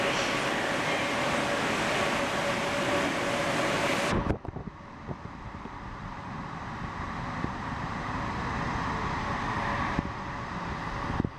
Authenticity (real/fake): fake